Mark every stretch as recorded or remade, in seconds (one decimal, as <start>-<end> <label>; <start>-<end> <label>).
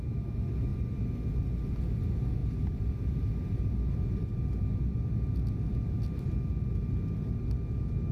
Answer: 0.0-8.1 recorded